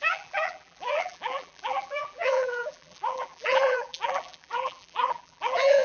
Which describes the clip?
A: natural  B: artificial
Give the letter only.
B